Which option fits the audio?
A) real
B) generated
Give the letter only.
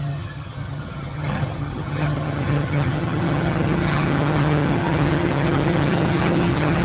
B